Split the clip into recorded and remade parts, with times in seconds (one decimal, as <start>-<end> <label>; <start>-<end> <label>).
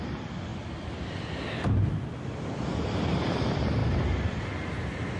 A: 0.0-5.2 recorded